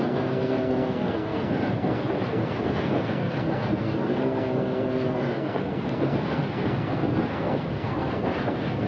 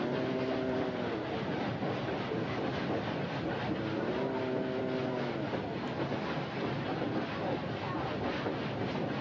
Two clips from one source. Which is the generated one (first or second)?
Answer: first